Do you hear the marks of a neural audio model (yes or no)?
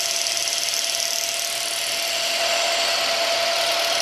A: no